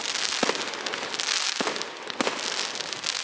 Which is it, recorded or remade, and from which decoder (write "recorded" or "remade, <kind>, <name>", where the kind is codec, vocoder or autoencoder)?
recorded